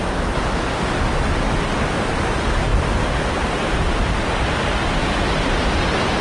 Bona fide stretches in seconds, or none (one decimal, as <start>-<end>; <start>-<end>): 0.0-6.2